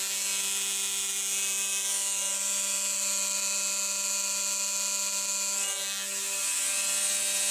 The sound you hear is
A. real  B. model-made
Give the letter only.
A